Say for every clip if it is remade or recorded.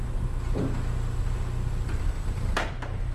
recorded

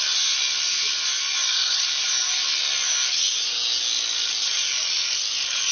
recorded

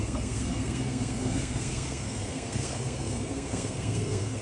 remade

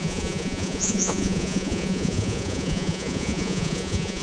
remade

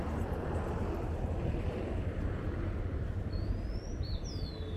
recorded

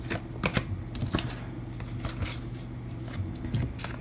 recorded